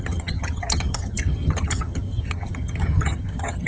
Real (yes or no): no